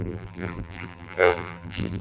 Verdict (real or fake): fake